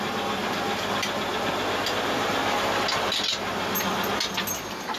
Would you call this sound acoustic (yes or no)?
yes